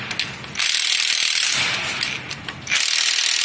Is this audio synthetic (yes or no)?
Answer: no